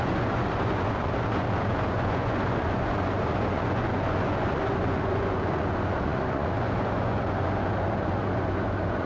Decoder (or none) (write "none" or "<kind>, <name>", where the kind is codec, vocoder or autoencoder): vocoder, Vocos